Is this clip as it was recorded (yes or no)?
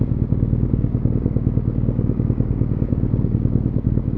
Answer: no